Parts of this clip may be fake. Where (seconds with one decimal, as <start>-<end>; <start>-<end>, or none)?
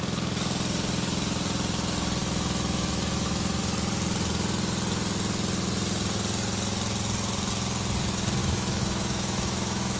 2.2-3.5; 8.4-10.0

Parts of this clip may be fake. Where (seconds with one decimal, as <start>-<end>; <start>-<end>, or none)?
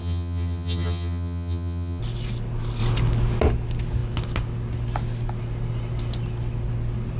0.0-2.0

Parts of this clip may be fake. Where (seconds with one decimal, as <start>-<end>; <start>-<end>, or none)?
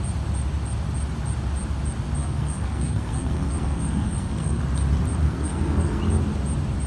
2.2-4.6; 5.2-6.0